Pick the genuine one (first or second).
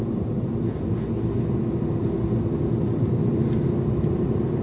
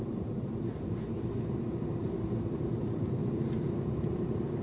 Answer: first